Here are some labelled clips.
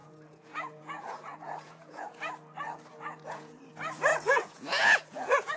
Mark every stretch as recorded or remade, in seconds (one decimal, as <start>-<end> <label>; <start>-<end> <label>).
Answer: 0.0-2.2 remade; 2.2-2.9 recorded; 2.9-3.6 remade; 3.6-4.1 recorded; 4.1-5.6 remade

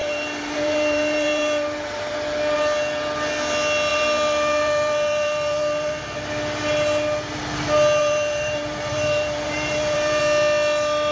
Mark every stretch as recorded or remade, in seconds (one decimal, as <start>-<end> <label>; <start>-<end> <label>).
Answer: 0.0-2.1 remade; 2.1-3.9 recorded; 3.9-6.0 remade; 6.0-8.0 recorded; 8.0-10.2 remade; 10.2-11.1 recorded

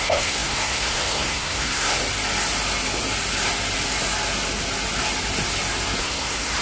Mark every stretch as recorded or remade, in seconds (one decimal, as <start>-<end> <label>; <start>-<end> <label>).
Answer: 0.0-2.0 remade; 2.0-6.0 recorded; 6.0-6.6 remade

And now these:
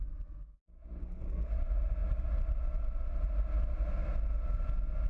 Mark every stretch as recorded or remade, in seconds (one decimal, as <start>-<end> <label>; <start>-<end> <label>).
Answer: 0.0-1.0 recorded; 1.0-1.5 remade; 1.5-5.1 recorded